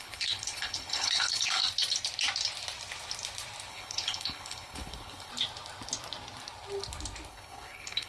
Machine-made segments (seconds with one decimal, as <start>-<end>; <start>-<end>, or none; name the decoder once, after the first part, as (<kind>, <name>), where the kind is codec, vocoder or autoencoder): 0.0-1.6 (codec, HILCodec); 3.7-5.3; 7.3-8.1